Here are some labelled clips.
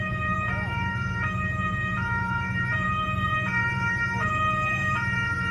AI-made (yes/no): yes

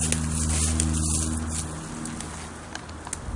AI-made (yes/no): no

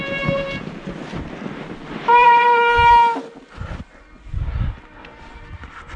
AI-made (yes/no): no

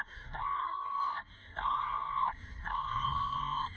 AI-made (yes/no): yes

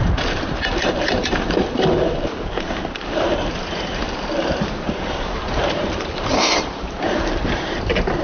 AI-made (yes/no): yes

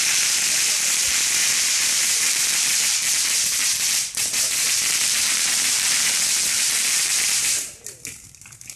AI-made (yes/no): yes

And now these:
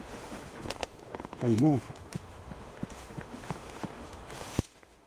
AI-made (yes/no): yes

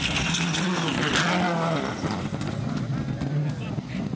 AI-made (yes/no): no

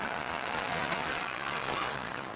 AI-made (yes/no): yes